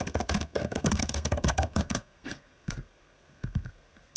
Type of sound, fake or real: fake